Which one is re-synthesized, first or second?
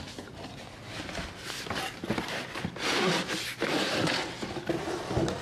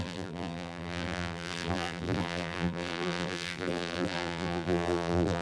second